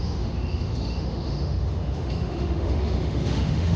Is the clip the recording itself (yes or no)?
no